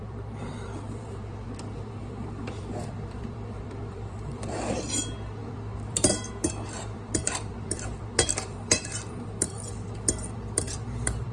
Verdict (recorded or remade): remade